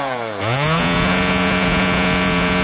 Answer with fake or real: fake